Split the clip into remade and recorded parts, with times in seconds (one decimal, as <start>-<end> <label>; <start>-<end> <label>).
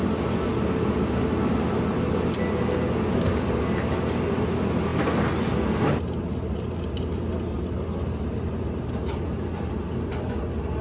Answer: 0.0-10.8 recorded